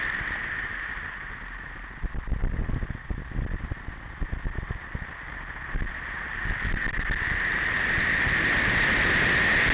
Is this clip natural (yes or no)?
no